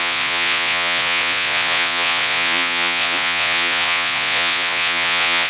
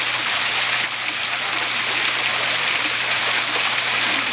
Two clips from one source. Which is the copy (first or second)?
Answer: first